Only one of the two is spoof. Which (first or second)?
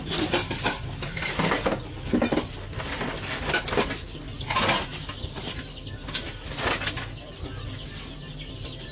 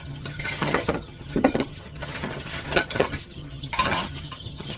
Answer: second